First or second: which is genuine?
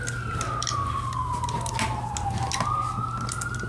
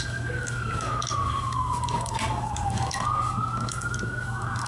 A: first